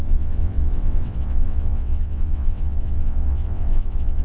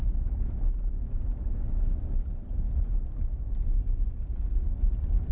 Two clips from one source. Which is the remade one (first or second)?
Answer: first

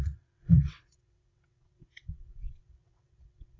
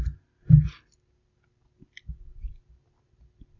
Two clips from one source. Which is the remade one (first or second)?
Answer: first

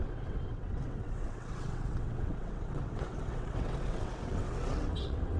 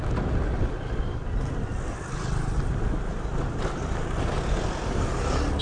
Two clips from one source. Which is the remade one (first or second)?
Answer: first